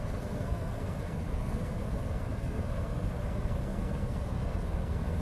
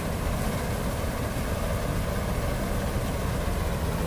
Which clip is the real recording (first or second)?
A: second